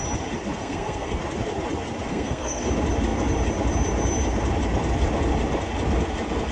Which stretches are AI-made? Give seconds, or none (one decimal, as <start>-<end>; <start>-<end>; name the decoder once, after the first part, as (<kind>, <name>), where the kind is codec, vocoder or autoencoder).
0.6-1.2 (codec, SNAC); 2.1-2.7